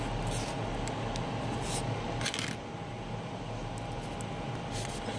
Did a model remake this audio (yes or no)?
no